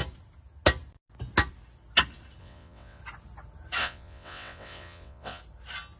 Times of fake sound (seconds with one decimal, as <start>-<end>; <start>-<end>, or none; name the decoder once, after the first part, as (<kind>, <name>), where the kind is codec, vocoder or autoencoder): 2.4-3.0 (vocoder, WaveNeXt); 3.8-5.4